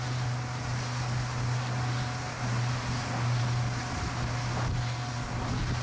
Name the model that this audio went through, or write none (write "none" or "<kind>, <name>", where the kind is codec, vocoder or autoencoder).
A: none